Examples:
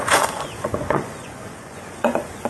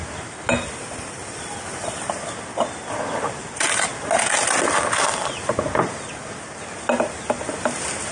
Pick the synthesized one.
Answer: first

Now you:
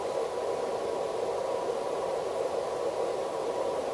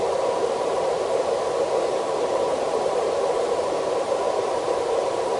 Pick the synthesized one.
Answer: second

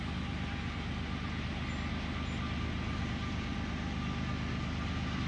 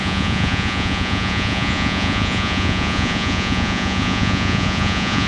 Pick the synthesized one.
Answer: second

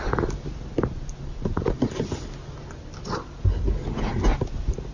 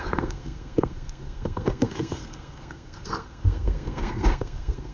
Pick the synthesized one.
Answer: second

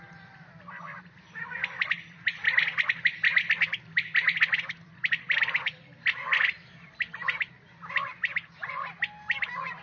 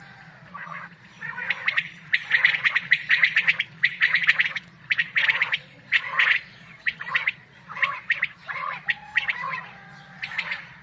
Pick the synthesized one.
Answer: second